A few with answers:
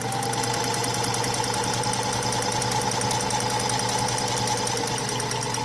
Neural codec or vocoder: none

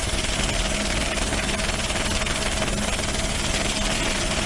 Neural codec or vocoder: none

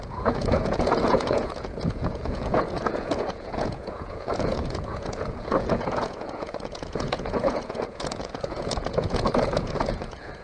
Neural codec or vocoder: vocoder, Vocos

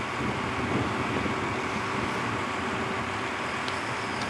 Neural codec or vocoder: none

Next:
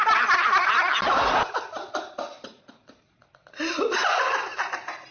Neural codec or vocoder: none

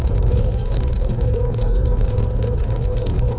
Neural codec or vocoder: codec, DAC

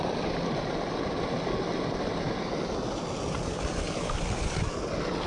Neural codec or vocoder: none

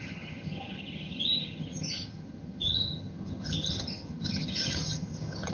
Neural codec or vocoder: vocoder, HiFi-GAN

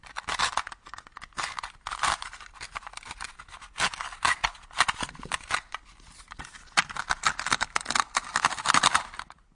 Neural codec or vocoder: none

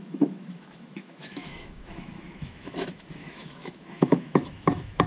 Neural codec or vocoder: autoencoder, DAC-VAE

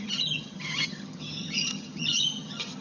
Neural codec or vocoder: vocoder, HiFi-GAN